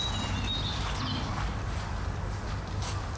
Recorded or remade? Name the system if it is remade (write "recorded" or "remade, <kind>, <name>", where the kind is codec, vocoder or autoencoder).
recorded